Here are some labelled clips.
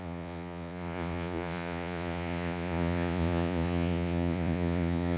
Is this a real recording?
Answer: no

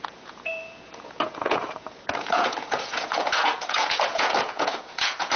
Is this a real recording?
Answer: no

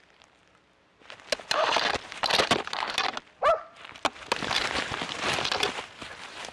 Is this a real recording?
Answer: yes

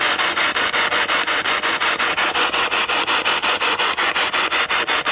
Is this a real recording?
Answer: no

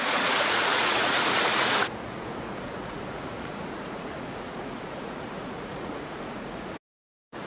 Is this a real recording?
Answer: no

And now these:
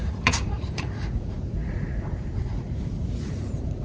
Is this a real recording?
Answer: no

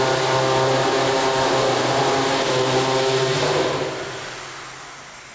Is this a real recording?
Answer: yes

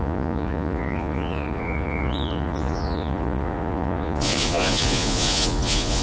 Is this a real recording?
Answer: no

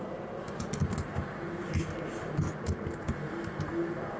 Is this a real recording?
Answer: yes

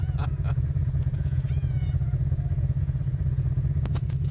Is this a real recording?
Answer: no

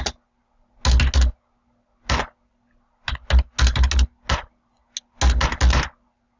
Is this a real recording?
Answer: yes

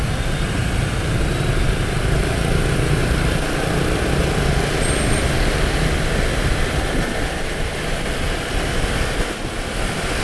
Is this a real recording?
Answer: yes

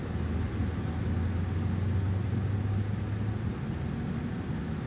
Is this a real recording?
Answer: yes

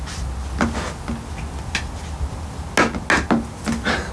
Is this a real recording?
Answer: yes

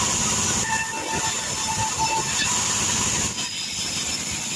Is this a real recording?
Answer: yes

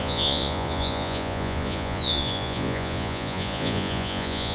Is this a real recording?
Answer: no